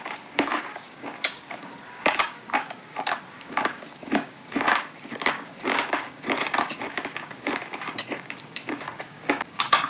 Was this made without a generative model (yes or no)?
no